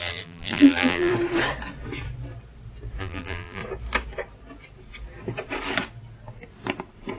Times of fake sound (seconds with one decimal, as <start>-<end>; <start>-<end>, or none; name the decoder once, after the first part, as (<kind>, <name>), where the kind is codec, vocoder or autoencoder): 0.0-1.1 (vocoder, BigVGAN v2); 3.0-3.6